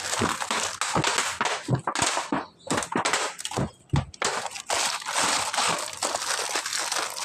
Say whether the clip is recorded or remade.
recorded